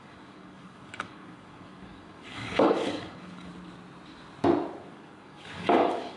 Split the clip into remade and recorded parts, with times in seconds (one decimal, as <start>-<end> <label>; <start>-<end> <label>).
0.0-3.5 remade; 3.5-4.8 recorded; 4.8-6.2 remade